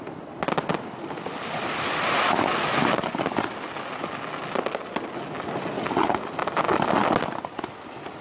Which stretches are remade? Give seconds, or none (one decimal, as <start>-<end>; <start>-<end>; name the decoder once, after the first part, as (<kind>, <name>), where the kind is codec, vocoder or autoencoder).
none